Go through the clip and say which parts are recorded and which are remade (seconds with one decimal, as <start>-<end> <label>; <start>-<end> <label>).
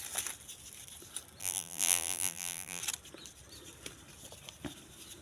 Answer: 0.0-1.4 recorded; 1.4-2.8 remade; 2.8-5.2 recorded